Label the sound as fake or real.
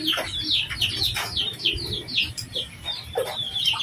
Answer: fake